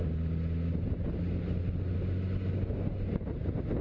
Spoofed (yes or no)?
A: no